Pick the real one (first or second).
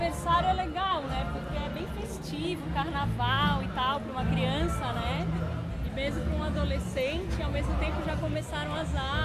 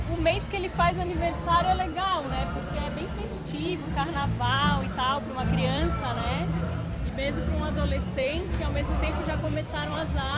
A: first